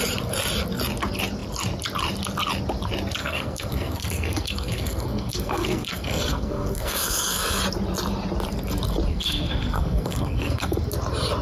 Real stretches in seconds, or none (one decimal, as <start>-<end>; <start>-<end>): 0.0-3.2; 7.6-9.1; 10.8-11.4